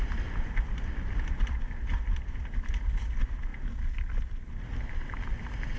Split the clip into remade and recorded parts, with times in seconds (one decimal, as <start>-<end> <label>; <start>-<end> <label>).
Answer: 0.0-5.8 recorded